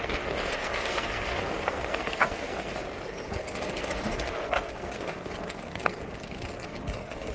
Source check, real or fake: fake